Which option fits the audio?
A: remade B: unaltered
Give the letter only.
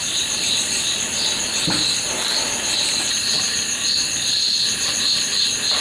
B